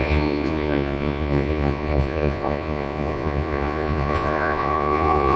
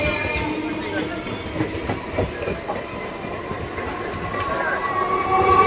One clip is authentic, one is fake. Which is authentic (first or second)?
second